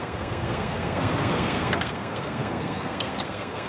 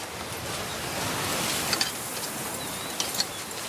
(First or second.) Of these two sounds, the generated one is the first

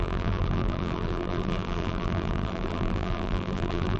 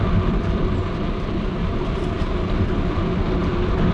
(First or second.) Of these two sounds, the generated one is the first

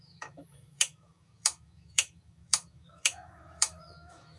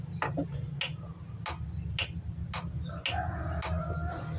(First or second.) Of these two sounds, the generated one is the first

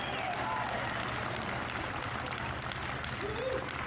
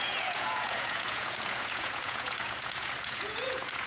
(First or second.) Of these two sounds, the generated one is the second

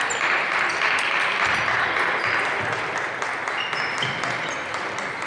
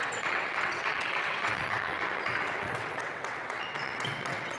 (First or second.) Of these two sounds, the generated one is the second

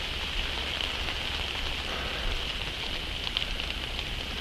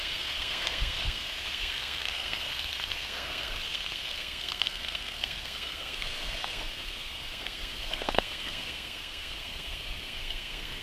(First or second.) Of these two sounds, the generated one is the second